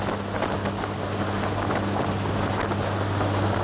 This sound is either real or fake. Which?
real